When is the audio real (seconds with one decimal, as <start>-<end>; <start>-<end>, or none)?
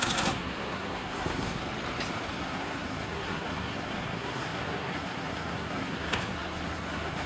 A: 1.6-2.3